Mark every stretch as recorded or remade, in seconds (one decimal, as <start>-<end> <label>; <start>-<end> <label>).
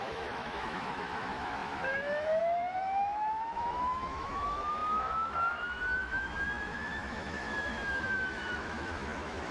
0.0-9.5 remade